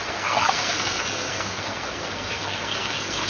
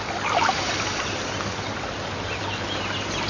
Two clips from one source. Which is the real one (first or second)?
second